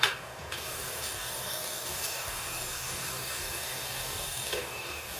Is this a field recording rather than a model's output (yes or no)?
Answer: no